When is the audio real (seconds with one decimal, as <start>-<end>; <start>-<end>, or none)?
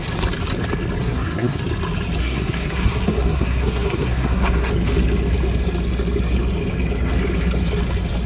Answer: 0.0-1.0; 1.6-2.2; 4.7-8.3